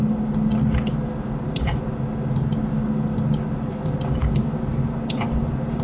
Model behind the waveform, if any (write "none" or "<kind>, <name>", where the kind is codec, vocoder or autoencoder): none